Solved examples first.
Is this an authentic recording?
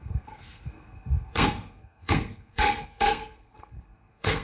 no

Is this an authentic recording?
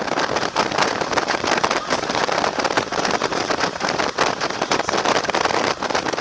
no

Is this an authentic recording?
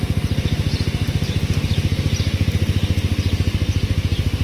yes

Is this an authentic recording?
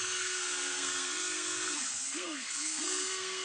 no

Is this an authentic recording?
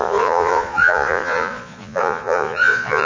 no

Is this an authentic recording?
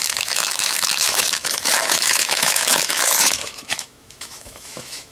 no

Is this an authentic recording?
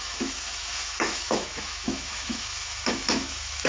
no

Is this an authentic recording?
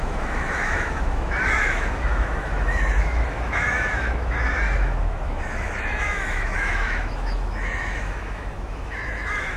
no